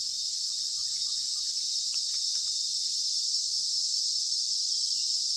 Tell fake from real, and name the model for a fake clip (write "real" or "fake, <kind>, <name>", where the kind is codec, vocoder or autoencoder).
fake, vocoder, BigVGAN v2